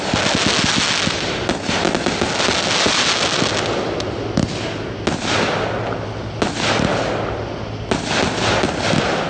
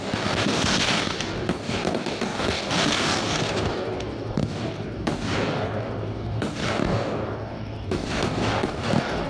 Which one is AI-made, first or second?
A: second